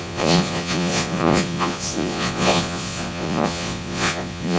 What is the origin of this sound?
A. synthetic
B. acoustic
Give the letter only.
A